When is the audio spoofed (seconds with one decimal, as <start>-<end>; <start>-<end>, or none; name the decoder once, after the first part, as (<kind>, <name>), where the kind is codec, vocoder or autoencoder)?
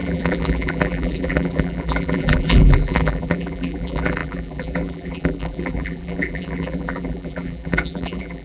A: 0.0-8.4 (vocoder, BigVGAN v2)